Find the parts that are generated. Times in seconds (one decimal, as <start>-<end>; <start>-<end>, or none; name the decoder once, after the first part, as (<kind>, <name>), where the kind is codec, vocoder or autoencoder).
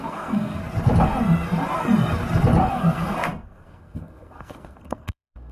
0.0-0.6 (codec, SNAC); 2.7-5.5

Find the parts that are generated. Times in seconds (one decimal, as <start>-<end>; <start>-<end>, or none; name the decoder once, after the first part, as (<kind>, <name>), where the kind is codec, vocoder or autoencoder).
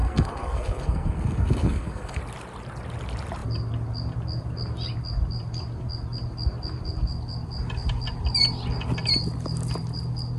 0.0-2.2 (codec, SNAC)